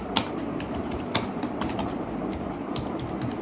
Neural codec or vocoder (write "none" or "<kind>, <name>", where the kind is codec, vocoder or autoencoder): none